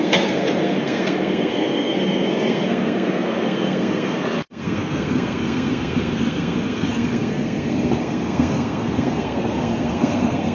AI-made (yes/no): yes